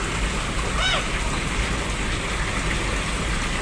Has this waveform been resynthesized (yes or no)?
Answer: no